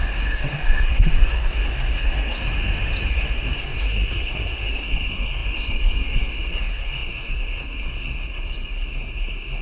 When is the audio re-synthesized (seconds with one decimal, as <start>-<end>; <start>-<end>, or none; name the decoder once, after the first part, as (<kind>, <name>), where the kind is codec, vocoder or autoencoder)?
0.0-2.4 (codec, SNAC); 3.1-9.6

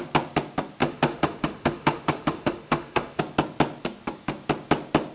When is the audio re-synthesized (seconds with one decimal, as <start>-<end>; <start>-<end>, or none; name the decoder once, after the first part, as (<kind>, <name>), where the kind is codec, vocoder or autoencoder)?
0.8-3.2 (autoencoder, DAC-VAE)

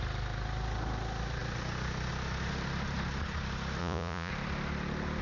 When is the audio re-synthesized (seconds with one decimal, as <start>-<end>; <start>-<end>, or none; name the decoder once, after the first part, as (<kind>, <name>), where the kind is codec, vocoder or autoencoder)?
3.8-4.3 (vocoder, Vocos)

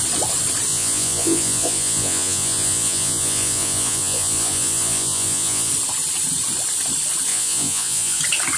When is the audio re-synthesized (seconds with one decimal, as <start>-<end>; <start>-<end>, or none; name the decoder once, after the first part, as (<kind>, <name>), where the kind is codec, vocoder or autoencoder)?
0.7-5.7 (vocoder, Vocos); 7.3-8.2

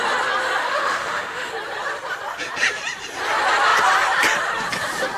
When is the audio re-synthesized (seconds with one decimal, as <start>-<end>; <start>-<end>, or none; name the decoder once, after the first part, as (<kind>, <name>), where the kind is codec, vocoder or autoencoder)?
0.6-1.5 (autoencoder, DAC-VAE)

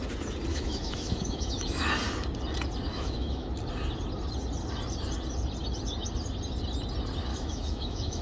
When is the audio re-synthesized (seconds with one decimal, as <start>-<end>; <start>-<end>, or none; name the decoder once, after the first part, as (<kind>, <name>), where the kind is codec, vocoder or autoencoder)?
0.5-1.9 (autoencoder, DAC-VAE); 2.9-3.5; 7.3-8.2